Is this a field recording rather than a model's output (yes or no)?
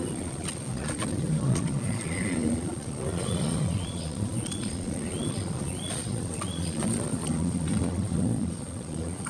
no